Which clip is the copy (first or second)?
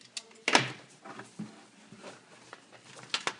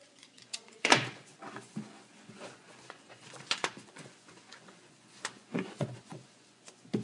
second